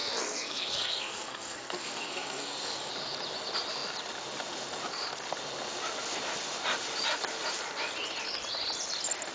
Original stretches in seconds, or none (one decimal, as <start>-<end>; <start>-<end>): 2.9-9.3